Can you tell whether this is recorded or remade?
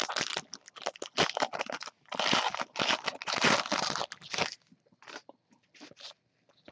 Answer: recorded